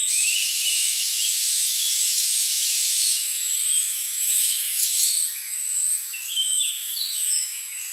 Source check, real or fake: fake